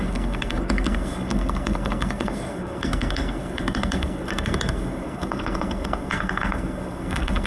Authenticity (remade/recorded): remade